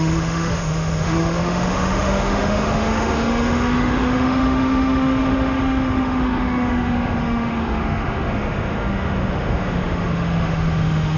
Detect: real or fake fake